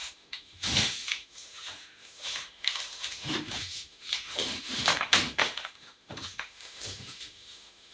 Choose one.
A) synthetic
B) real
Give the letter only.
A